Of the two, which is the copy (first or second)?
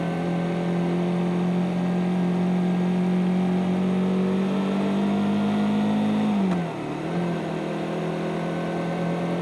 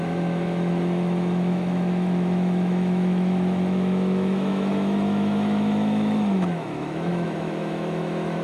second